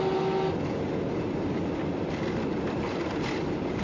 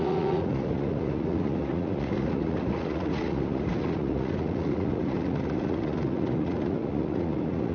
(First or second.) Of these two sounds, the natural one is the first